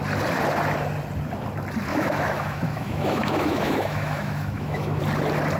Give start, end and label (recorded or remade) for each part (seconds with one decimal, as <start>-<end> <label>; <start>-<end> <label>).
0.0-1.9 recorded; 1.9-5.0 remade; 5.0-5.6 recorded